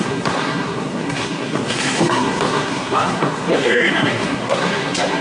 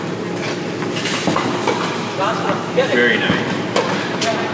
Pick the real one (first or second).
second